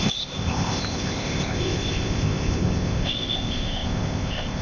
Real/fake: fake